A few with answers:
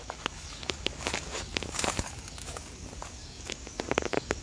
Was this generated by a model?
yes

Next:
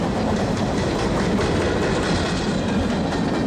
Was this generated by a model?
no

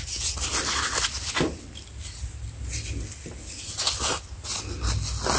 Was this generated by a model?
no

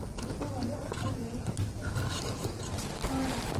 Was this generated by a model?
no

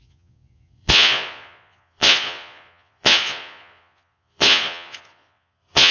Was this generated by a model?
yes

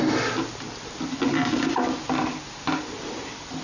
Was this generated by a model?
no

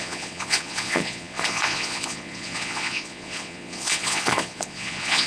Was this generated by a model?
yes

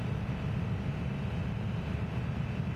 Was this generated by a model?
no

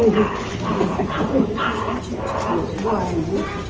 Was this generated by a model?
no